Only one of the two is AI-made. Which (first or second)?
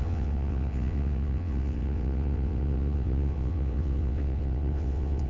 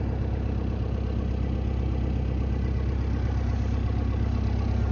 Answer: first